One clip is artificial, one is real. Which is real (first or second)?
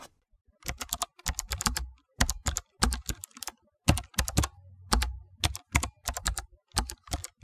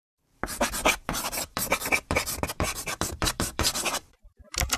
first